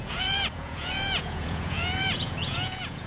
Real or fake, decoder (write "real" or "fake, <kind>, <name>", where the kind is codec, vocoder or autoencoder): fake, vocoder, Vocos